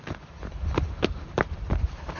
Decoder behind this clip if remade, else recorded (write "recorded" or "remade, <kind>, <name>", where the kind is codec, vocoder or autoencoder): remade, vocoder, BigVGAN v2